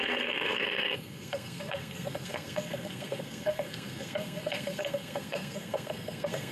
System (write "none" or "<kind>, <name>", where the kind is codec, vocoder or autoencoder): codec, SNAC